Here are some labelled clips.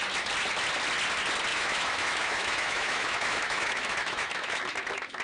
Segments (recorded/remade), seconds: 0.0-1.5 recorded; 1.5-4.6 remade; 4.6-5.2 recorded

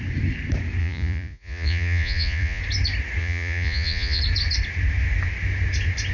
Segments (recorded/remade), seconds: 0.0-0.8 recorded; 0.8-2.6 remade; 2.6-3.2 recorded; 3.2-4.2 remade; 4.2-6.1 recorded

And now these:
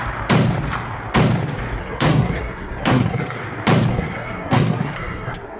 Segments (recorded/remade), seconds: 0.0-1.8 recorded; 1.8-3.4 remade; 3.4-3.9 recorded; 3.9-5.6 remade

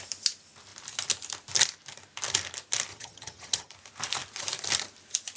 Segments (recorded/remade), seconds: 0.0-2.9 recorded; 2.9-3.7 remade; 3.7-5.4 recorded